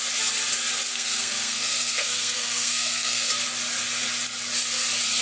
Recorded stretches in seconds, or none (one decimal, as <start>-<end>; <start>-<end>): 0.0-0.9; 3.3-5.2